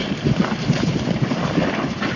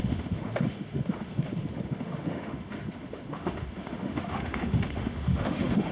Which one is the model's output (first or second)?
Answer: second